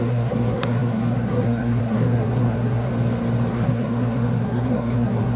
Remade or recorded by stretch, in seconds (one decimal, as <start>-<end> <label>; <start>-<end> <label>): 0.0-2.9 remade; 2.9-3.5 recorded; 3.5-5.4 remade